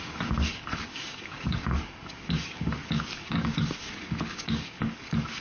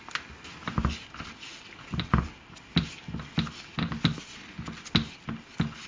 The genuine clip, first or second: second